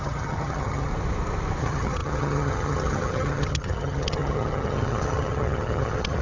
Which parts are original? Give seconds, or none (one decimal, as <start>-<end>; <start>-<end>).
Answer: 0.9-1.6

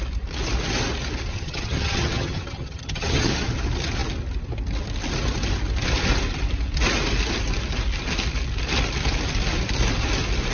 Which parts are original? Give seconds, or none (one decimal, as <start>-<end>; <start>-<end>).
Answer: 0.0-1.3; 3.3-10.5

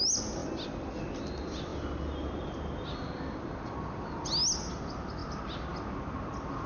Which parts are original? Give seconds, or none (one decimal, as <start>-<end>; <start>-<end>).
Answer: 0.0-6.7

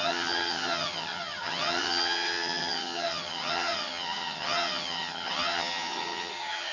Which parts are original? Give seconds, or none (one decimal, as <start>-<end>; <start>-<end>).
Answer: none

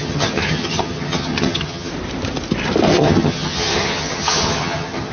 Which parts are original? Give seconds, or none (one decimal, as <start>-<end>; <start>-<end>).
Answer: 1.9-2.9

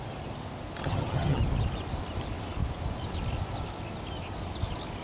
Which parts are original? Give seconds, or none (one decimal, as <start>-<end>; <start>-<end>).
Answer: 0.0-0.8; 1.4-5.0